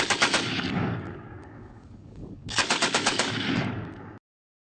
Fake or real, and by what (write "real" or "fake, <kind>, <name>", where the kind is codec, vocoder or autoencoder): fake, codec, DAC